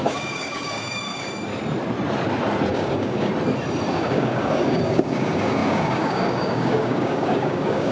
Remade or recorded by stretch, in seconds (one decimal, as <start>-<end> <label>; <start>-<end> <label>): 0.0-1.5 remade; 1.5-2.7 recorded; 2.7-3.3 remade; 3.3-3.9 recorded; 3.9-7.9 remade